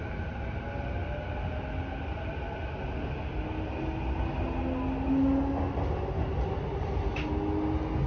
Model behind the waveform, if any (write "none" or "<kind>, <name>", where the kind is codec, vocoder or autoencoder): none